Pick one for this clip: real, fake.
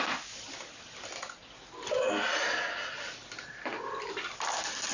real